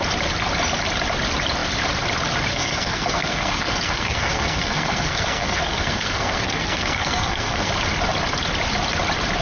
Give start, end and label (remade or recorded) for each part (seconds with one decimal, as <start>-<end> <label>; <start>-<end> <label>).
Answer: 0.0-2.5 recorded; 2.5-7.7 remade; 7.7-9.4 recorded